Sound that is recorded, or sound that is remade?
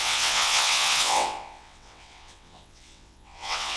remade